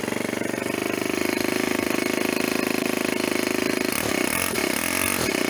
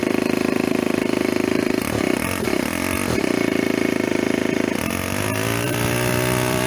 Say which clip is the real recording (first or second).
first